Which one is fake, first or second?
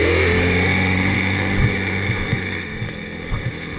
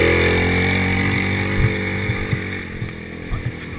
first